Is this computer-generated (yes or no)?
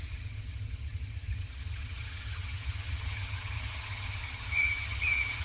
yes